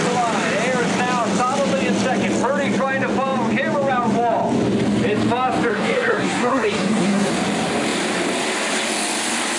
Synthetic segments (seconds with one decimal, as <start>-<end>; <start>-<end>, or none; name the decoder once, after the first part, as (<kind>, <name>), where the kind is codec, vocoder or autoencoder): 5.7-7.3 (codec, SNAC)